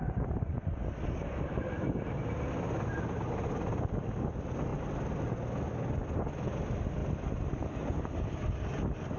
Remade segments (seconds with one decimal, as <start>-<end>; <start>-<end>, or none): none